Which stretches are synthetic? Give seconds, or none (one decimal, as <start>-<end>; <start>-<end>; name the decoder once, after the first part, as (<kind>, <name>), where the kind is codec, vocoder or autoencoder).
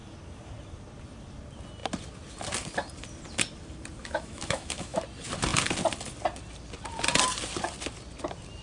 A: 4.0-5.0 (autoencoder, DAC-VAE)